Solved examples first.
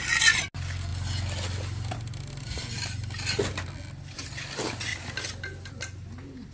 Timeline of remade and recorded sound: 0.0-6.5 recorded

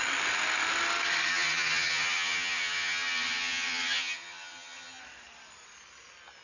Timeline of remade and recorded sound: 0.0-1.3 recorded; 1.3-5.0 remade; 5.0-6.4 recorded

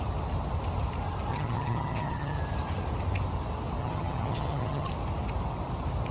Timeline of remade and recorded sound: 0.0-1.3 recorded; 1.3-2.4 remade; 2.4-3.8 recorded; 3.8-4.9 remade; 4.9-6.1 recorded

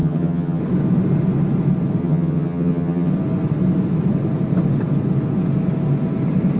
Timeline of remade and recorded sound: 0.0-0.6 remade; 0.6-2.0 recorded; 2.0-3.1 remade; 3.1-6.6 recorded